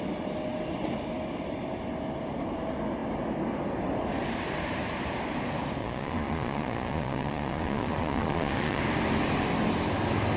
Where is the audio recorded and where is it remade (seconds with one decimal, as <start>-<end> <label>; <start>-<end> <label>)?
0.0-5.8 recorded; 5.8-8.8 remade; 8.8-10.4 recorded